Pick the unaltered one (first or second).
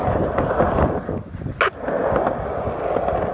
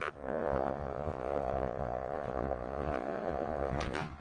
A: first